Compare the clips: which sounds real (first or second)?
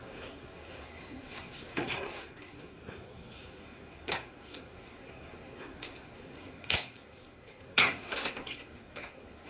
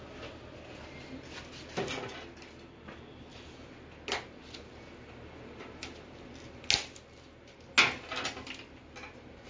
second